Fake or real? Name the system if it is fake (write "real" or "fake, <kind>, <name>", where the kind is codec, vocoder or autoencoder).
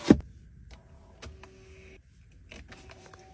real